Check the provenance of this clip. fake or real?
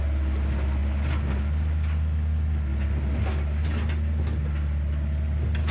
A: real